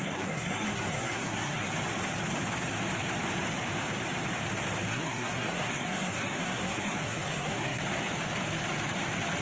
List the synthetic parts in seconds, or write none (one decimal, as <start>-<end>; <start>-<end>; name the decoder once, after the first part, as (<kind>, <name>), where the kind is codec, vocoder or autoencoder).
0.0-1.7 (codec, SNAC); 4.9-7.8